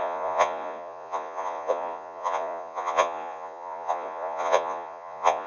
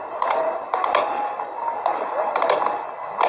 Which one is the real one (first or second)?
second